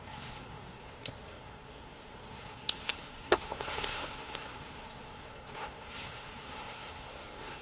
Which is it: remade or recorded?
remade